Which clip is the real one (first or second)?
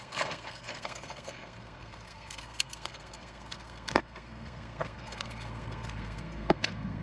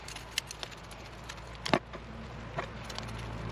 second